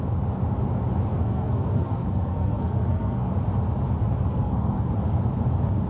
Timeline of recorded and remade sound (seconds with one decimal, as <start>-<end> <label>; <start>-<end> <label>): 0.0-1.1 recorded; 1.1-3.3 remade; 3.3-4.3 recorded; 4.3-4.9 remade; 4.9-5.9 recorded